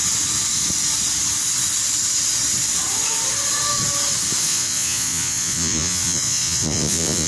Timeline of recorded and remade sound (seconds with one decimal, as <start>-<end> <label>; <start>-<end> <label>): 0.0-4.4 recorded; 4.4-7.3 remade